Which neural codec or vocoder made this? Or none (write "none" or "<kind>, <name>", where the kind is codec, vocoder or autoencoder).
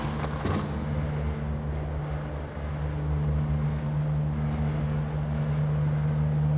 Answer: none